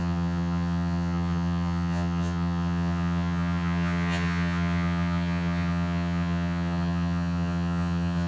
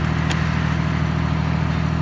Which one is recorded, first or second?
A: second